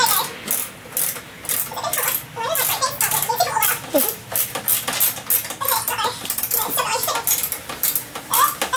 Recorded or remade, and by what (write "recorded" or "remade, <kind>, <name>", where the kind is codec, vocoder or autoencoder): recorded